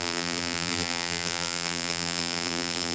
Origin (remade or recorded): remade